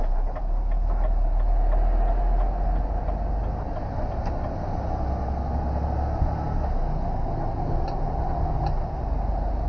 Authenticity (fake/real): real